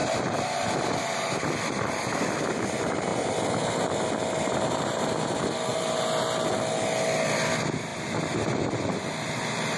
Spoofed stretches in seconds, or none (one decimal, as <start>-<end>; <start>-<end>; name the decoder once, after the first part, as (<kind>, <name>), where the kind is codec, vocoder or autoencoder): 0.0-2.5 (vocoder, BigVGAN v2); 5.7-6.2; 7.9-9.1